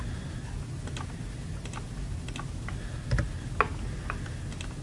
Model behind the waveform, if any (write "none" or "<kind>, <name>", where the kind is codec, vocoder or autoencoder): none